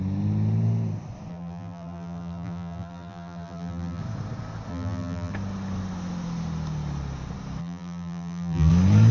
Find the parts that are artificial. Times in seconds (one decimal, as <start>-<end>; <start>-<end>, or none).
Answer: 1.3-4.0; 4.7-5.3; 7.6-8.7

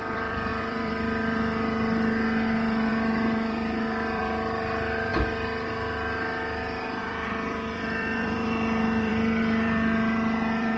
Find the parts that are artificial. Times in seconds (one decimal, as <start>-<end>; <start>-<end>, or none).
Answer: 0.0-5.1; 7.0-10.8

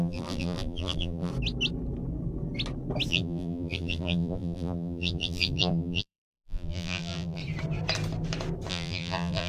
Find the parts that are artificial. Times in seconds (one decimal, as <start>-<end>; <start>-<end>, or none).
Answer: 0.0-1.3; 3.1-7.4; 8.7-9.5

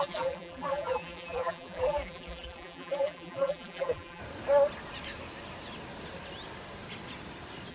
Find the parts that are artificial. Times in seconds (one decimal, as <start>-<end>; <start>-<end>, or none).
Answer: 0.0-4.2

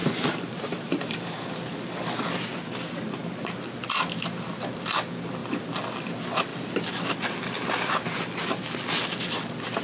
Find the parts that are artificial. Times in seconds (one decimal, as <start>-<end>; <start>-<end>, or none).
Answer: 0.0-1.5

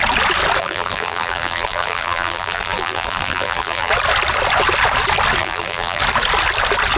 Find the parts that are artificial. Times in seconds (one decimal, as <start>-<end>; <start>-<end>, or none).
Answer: 0.6-3.9; 5.4-6.0